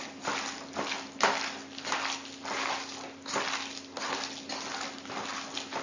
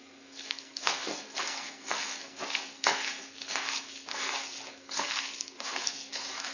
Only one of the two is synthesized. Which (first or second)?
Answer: second